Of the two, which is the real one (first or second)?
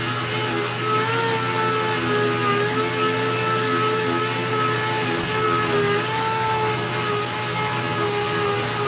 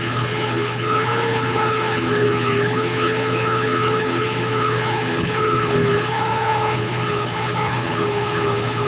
first